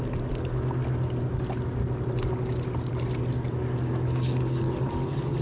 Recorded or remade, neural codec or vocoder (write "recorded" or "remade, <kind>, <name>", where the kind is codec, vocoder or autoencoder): recorded